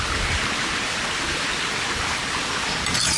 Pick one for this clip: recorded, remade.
recorded